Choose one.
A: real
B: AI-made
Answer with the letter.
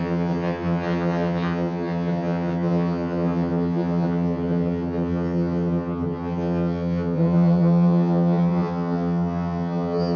B